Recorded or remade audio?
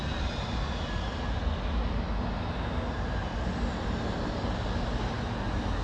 recorded